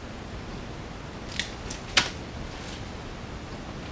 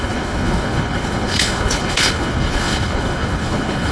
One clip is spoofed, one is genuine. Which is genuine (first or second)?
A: first